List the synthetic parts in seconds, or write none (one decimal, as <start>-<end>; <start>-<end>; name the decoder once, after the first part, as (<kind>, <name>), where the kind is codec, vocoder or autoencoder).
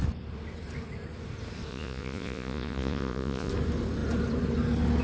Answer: 1.7-3.5 (vocoder, Vocos)